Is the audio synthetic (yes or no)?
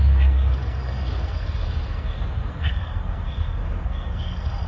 yes